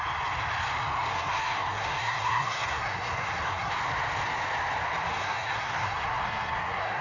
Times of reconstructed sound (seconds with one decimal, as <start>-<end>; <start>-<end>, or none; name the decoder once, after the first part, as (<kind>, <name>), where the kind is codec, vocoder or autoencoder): 1.1-3.7 (codec, SNAC); 5.1-7.0